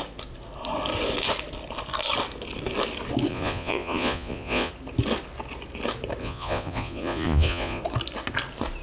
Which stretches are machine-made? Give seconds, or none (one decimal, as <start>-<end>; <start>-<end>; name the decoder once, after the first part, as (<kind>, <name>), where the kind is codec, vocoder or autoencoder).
3.3-4.7 (vocoder, Vocos); 6.2-7.8